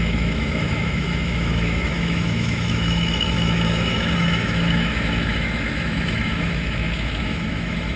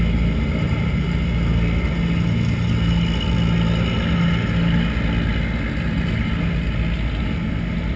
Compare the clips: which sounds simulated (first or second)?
first